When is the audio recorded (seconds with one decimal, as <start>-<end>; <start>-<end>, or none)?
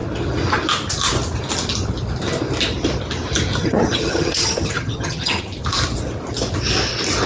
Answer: 0.0-3.6; 5.4-7.3